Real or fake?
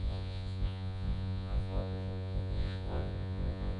fake